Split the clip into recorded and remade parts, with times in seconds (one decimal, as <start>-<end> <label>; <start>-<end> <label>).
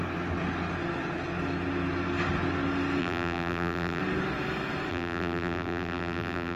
0.0-3.0 recorded; 3.0-4.0 remade; 4.0-4.9 recorded; 4.9-6.6 remade